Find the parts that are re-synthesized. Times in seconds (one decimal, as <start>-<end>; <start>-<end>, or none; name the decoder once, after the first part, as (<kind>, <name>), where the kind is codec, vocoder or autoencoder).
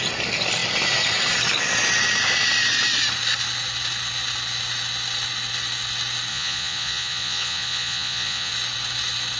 6.3-8.5 (vocoder, Vocos)